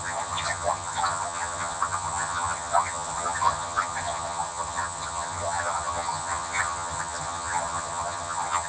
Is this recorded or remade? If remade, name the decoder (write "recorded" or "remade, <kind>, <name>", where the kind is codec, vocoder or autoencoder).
remade, vocoder, HiFi-GAN